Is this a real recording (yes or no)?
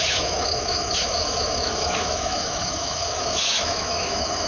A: no